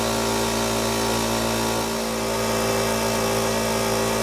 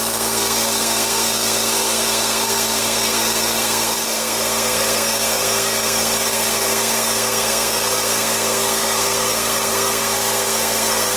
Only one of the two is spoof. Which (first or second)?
second